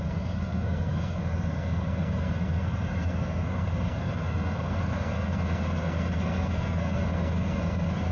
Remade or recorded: remade